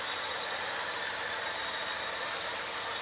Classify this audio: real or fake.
real